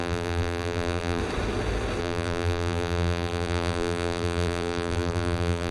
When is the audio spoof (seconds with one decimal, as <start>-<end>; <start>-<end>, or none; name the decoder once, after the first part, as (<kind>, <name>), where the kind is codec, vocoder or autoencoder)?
0.0-1.2 (vocoder, BigVGAN v2); 2.0-5.7